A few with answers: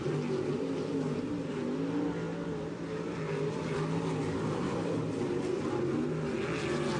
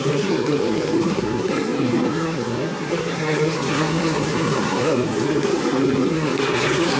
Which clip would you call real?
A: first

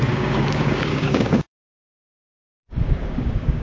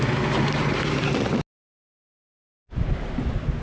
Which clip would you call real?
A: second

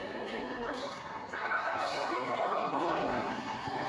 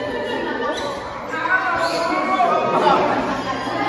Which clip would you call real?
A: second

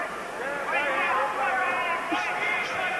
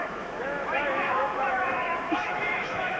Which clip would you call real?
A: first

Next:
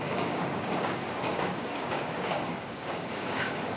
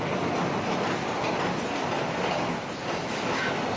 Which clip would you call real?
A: second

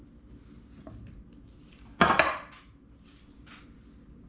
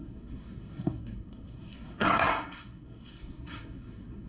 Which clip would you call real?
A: first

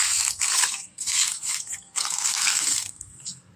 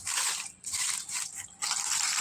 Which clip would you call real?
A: second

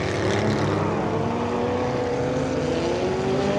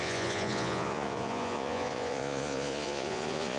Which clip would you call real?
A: first